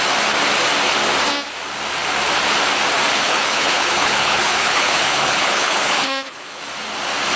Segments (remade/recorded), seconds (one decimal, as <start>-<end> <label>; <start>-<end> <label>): 0.0-3.1 recorded; 3.1-6.6 remade; 6.6-7.4 recorded